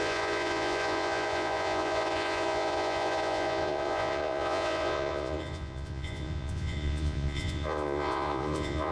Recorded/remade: remade